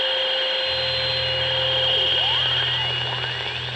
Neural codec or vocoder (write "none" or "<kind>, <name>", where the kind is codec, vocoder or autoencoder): none